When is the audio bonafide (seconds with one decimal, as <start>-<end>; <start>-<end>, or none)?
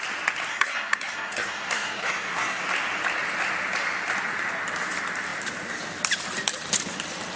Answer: 0.0-0.5; 2.6-7.4